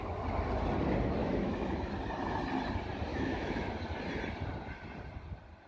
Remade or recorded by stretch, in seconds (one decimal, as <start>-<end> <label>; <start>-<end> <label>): 0.0-1.2 recorded; 1.2-1.9 remade; 1.9-3.1 recorded; 3.1-3.7 remade; 3.7-5.7 recorded